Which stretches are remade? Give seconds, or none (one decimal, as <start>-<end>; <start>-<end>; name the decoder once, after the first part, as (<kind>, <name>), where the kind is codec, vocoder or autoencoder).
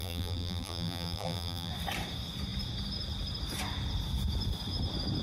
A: 0.0-1.7 (vocoder, BigVGAN v2)